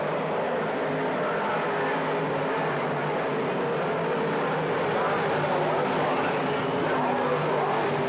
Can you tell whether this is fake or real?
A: real